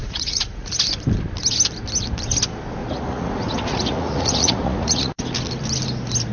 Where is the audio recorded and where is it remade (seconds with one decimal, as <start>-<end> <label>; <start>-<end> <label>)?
0.0-0.7 remade; 0.7-2.8 recorded; 2.8-5.2 remade; 5.2-6.3 recorded